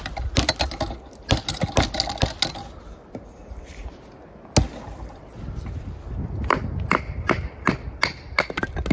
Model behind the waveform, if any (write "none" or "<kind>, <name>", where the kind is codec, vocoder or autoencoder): none